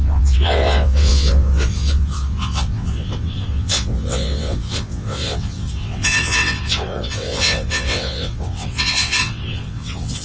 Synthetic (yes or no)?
yes